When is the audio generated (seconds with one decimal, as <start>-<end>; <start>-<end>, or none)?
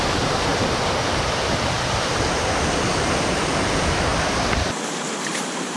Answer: 0.0-0.5; 2.0-2.4; 3.0-4.1; 4.9-5.8